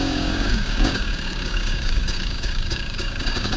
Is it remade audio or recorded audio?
remade